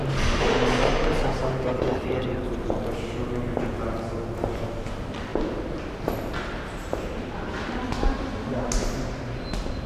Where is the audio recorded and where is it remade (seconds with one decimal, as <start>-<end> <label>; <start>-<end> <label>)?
0.0-9.9 recorded